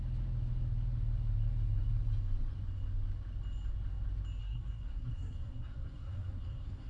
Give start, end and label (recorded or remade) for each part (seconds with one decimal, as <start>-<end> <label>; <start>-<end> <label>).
0.0-4.4 recorded; 4.4-6.9 remade